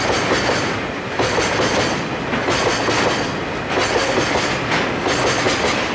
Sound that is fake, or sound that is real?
real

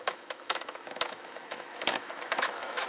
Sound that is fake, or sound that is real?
fake